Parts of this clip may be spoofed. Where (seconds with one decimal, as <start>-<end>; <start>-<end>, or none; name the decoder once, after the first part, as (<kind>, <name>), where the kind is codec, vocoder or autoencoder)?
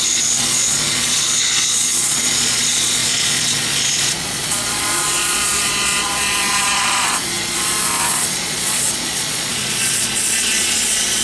0.0-11.2 (vocoder, Vocos)